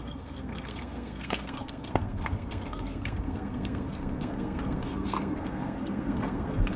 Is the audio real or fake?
fake